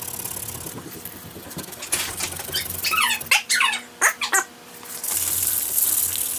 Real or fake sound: real